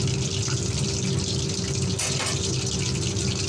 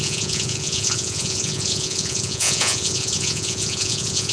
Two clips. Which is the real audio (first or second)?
first